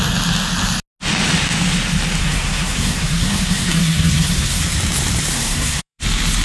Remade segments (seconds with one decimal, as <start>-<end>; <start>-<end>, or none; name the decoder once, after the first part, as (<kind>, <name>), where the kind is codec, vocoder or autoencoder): 2.2-4.6 (codec, SNAC); 5.3-6.0